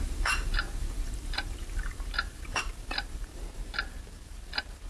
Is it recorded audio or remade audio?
remade